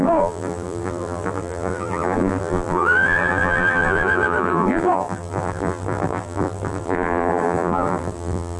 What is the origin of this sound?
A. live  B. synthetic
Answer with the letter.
B